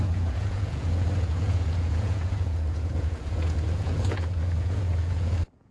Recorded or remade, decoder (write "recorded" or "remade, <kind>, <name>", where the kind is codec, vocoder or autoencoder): remade, vocoder, Vocos